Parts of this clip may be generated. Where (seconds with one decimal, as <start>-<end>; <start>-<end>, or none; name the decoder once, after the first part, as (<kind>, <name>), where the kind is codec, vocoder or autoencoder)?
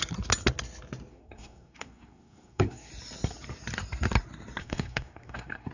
1.1-2.9 (codec, SNAC); 4.6-5.7